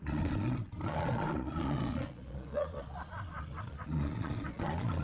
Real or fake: fake